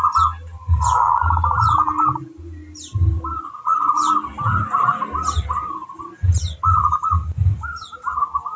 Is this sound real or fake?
real